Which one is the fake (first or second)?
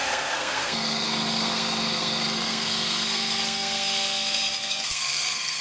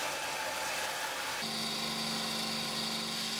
first